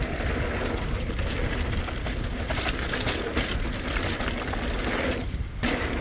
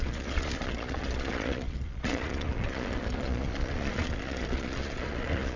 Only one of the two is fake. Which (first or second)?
second